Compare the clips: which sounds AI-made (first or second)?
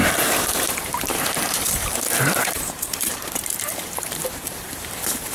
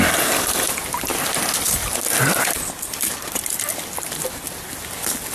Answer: first